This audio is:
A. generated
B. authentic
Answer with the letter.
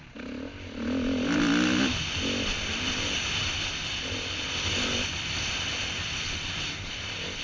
B